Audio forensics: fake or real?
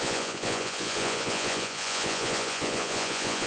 fake